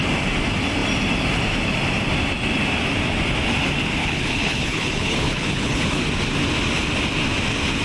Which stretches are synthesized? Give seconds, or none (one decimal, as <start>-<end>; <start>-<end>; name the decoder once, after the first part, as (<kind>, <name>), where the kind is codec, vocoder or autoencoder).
4.0-6.0 (codec, HILCodec)